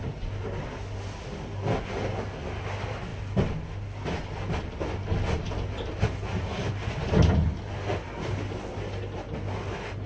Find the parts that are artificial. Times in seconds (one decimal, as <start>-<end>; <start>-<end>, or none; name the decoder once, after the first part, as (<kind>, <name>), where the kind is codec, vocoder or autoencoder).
none